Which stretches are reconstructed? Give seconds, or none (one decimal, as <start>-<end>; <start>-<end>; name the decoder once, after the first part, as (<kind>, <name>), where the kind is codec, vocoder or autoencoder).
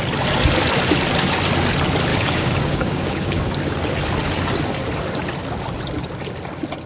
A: 2.1-3.5 (codec, DAC)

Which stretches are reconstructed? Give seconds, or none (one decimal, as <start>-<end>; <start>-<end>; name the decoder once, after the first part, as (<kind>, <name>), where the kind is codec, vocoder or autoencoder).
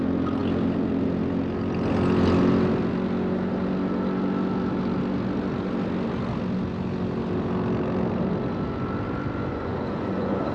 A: 9.5-10.5 (vocoder, Vocos)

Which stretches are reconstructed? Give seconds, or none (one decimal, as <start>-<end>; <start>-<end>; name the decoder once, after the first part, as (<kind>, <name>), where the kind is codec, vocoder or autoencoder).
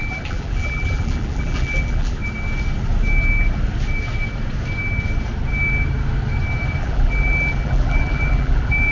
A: 0.0-2.2 (vocoder, BigVGAN v2); 6.8-8.9